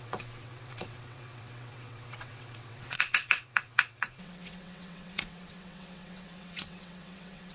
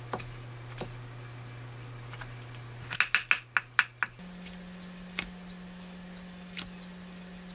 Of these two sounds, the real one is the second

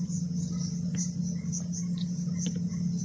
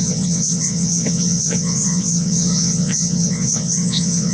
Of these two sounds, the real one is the first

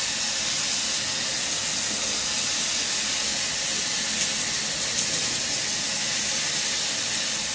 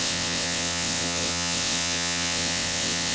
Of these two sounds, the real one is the first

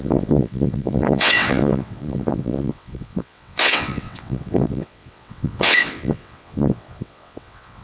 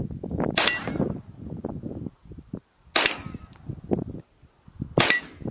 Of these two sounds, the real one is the second